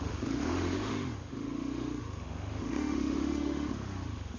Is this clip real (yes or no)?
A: no